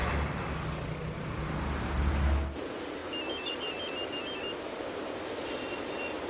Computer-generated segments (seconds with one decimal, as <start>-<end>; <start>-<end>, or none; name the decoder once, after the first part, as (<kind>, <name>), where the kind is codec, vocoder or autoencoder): none